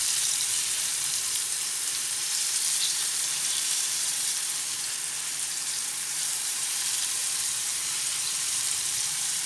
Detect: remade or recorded remade